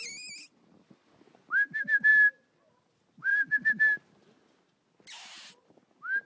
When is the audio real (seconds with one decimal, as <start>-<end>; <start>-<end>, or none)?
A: 0.0-6.2